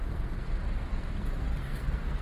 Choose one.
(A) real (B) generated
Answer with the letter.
B